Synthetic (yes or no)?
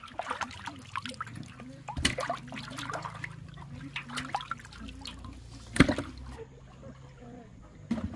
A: no